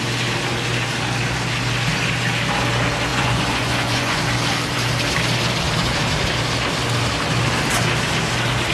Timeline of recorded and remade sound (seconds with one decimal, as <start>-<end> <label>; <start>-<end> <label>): 0.0-3.1 recorded; 3.1-4.2 remade; 4.2-8.7 recorded